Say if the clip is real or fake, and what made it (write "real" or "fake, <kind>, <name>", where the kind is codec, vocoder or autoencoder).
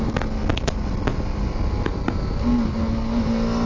real